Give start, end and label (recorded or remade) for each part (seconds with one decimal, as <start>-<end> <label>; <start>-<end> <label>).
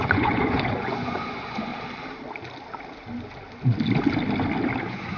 0.0-1.7 remade; 1.7-4.8 recorded; 4.8-5.2 remade